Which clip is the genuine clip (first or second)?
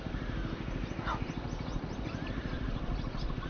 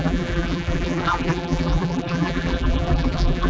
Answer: first